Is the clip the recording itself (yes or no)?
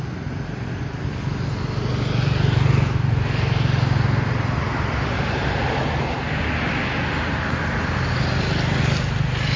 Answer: yes